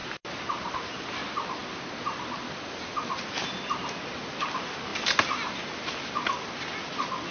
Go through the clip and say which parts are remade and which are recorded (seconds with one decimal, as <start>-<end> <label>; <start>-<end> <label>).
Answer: 0.0-7.3 recorded